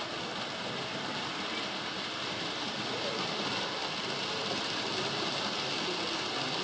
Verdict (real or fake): real